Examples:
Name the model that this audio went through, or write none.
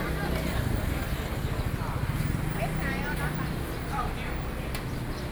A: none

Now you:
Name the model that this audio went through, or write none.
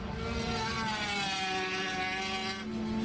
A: none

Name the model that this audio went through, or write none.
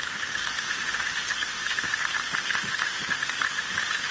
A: autoencoder, DAC-VAE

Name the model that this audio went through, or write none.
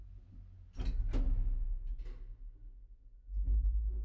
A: none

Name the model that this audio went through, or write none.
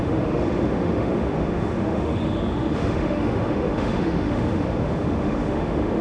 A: autoencoder, DAC-VAE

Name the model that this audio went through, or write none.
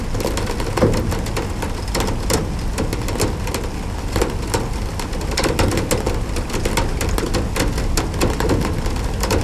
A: none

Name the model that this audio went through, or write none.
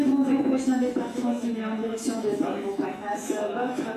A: autoencoder, DAC-VAE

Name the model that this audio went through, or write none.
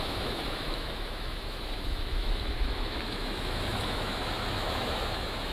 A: autoencoder, DAC-VAE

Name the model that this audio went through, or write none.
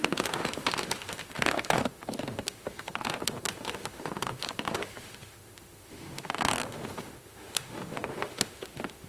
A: autoencoder, DAC-VAE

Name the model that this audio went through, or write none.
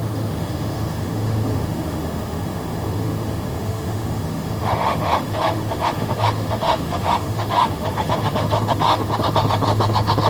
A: autoencoder, DAC-VAE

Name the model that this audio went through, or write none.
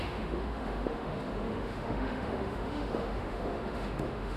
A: autoencoder, DAC-VAE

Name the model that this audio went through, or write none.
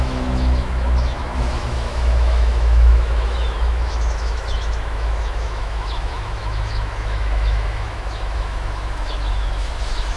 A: autoencoder, DAC-VAE